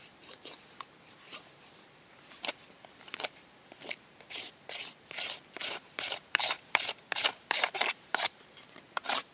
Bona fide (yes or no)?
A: no